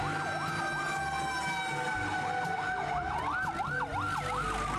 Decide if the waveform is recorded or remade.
recorded